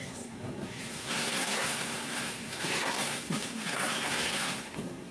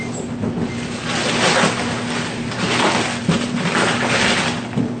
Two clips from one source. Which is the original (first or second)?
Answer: second